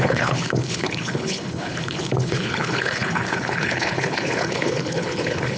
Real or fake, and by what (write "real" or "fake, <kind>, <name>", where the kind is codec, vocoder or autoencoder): fake, codec, HILCodec